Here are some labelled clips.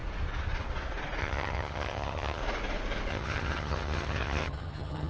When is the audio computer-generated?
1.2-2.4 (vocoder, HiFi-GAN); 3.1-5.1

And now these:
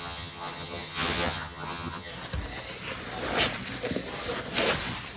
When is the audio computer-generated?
0.0-2.1 (vocoder, HiFi-GAN)

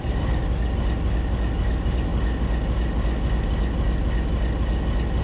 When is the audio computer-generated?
0.0-0.4 (vocoder, BigVGAN v2); 1.6-2.1